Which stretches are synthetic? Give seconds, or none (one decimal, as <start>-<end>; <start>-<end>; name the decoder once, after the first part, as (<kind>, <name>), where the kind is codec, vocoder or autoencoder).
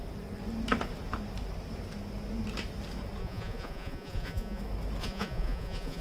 3.2-4.6 (vocoder, Vocos); 5.0-6.0